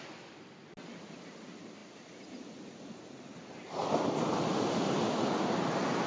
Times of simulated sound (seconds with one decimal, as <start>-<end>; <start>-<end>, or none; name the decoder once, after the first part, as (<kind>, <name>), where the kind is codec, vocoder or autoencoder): none